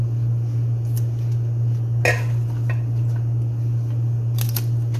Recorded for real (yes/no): yes